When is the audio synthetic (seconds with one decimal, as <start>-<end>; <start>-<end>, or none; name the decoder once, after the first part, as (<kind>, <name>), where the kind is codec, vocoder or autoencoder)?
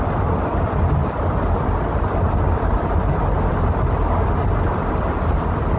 none